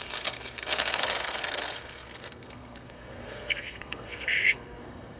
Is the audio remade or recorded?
remade